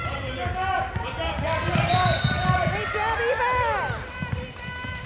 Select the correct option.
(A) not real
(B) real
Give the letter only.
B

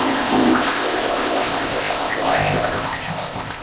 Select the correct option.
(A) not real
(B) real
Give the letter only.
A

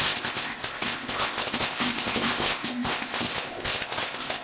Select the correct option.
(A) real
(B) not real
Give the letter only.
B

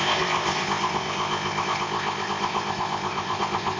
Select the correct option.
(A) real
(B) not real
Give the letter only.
B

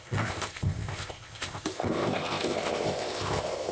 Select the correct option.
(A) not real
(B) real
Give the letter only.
A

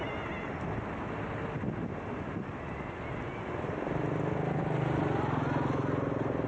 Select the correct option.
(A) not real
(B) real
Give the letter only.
B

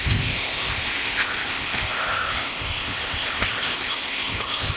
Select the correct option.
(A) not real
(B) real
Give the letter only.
A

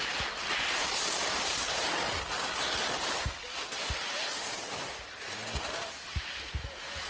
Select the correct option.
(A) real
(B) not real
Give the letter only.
A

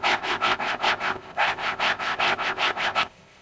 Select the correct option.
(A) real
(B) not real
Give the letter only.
B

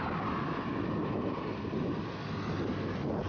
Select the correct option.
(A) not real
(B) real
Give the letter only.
B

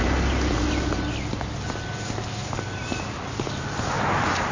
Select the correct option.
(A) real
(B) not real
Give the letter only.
A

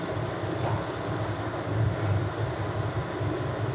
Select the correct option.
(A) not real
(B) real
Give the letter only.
B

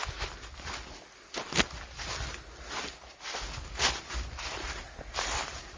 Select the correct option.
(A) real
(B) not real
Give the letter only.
A